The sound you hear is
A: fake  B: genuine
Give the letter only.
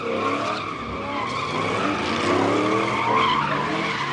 B